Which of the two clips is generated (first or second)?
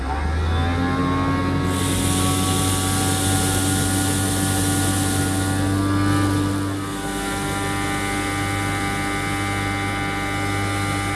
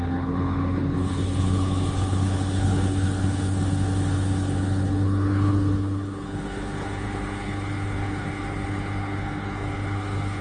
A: second